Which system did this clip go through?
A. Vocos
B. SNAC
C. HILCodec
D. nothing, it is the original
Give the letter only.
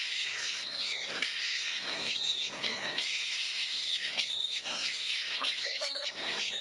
B